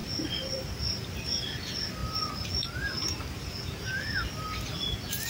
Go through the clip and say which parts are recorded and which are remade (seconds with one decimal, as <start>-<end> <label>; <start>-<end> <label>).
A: 0.0-0.8 remade; 0.8-2.0 recorded; 2.0-5.3 remade